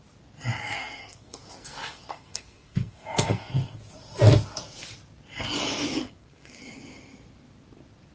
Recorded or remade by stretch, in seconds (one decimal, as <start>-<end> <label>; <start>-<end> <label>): 0.0-0.6 recorded; 0.6-3.8 remade; 3.8-6.0 recorded; 6.0-6.6 remade; 6.6-8.1 recorded